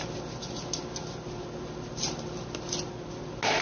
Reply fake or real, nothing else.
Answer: real